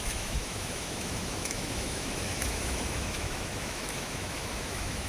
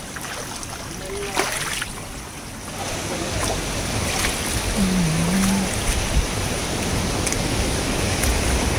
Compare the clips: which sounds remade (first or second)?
first